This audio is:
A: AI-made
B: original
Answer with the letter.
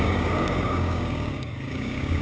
A